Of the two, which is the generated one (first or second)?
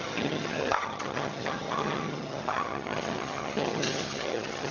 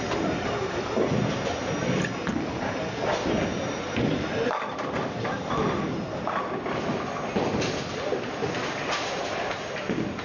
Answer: first